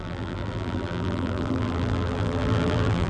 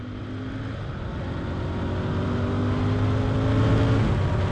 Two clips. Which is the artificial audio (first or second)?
first